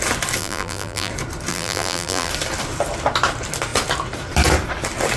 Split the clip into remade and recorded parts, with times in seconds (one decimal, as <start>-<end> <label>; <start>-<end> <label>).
0.0-0.4 recorded; 0.4-1.1 remade; 1.1-1.5 recorded; 1.5-2.3 remade; 2.3-5.2 recorded